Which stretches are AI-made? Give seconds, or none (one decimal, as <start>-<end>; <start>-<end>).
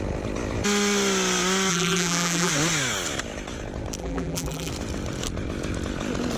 1.7-2.5; 4.0-4.7